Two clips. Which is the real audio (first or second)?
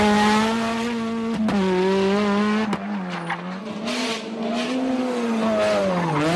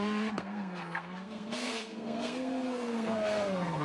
first